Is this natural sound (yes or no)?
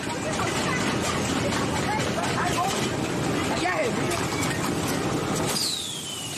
yes